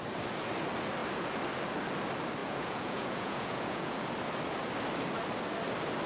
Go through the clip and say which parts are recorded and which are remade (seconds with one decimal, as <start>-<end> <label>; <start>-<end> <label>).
0.0-2.4 recorded; 2.4-3.9 remade; 3.9-6.1 recorded